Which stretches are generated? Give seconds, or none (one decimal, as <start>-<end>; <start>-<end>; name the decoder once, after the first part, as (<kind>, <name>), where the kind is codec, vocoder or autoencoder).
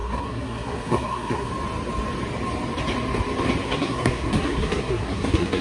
0.0-1.5 (codec, SNAC); 3.6-5.6